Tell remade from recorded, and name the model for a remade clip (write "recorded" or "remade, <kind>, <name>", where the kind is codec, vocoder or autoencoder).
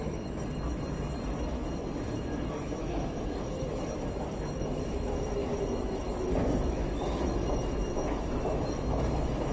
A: remade, autoencoder, DAC-VAE